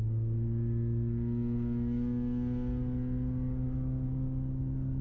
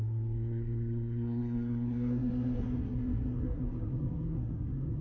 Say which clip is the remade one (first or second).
second